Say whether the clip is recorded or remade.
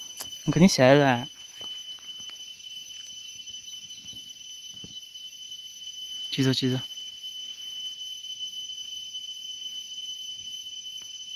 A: recorded